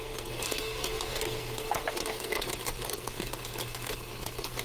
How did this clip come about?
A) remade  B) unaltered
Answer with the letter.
A